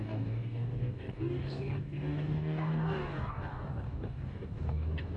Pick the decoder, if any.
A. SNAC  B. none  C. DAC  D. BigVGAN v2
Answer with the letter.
C